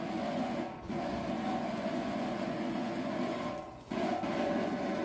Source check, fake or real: fake